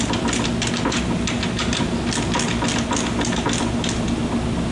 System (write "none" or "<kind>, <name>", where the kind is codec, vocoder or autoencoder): none